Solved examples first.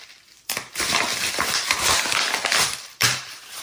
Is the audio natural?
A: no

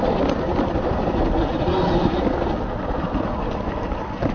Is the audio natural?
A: yes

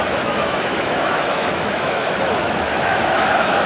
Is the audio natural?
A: no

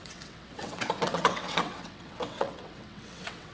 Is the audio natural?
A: no